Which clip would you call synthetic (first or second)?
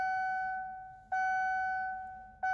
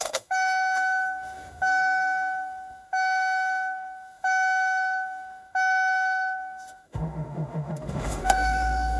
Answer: second